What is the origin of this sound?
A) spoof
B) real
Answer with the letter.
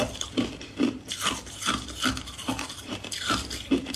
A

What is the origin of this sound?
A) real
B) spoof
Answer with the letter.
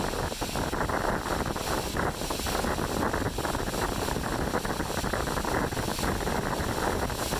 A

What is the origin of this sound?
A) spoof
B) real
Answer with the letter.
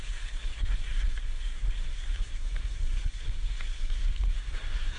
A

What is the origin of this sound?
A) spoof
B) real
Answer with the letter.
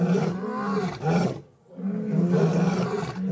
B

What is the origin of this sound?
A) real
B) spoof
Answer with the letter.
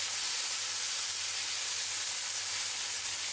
A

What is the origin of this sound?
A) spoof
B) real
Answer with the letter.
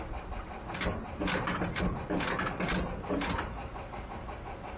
B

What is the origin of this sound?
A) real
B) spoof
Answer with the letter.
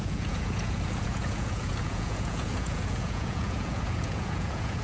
B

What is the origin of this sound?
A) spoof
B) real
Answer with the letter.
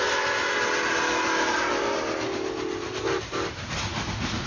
B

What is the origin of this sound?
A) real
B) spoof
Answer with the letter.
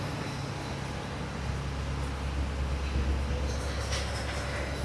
A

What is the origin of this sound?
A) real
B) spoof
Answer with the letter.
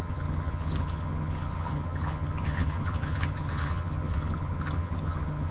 B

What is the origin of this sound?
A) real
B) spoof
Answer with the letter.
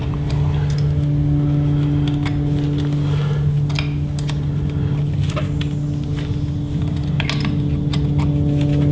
A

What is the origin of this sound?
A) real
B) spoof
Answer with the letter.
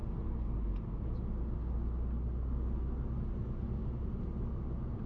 A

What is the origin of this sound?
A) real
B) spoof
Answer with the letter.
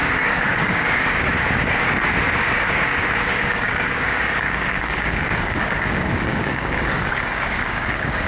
B